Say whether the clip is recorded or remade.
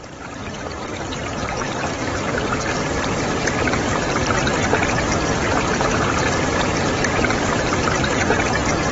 remade